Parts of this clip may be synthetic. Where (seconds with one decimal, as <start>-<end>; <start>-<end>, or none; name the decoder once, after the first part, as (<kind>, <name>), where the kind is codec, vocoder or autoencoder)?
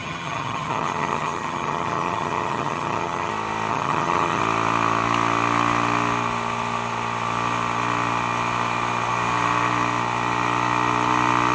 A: 0.0-3.3 (vocoder, HiFi-GAN); 3.7-4.4